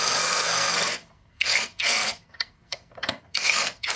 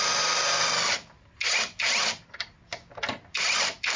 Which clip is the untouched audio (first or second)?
second